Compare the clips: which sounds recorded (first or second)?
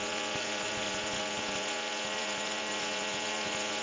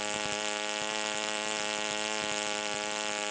second